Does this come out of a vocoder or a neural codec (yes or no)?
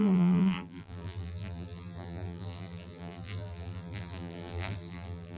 yes